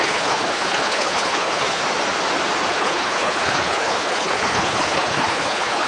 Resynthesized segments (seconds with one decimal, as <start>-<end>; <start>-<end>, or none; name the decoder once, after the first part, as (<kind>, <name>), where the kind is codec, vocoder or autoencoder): 0.0-1.8 (codec, HILCodec); 2.7-5.9